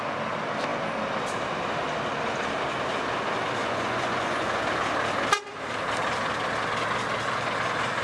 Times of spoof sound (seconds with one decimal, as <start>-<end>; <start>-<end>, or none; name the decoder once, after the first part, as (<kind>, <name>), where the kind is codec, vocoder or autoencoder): 3.6-4.6 (vocoder, Vocos)